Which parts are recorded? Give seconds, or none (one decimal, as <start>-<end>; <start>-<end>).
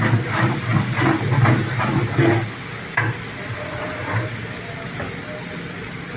0.0-6.2